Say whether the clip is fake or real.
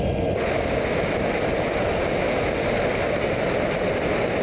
real